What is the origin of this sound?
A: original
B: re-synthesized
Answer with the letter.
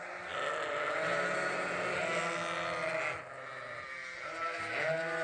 A